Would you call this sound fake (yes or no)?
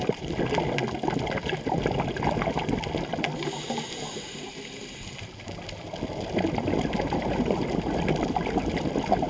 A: no